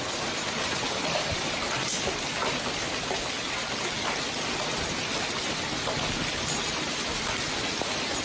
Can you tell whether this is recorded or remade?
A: recorded